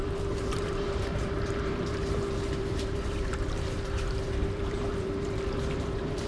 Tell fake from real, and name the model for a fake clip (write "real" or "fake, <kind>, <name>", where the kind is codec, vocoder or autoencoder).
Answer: fake, vocoder, BigVGAN v2